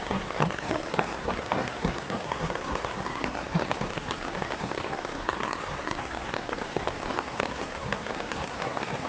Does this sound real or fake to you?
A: fake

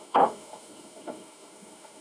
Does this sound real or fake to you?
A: fake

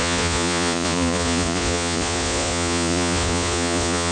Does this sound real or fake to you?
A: fake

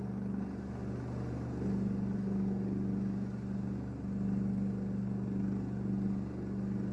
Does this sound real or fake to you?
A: real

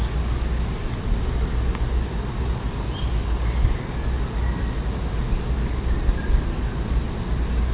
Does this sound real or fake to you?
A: real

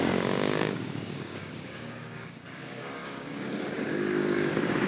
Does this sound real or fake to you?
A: fake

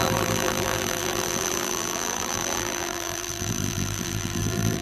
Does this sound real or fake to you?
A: fake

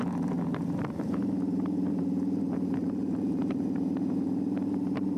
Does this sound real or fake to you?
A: fake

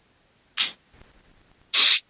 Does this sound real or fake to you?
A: real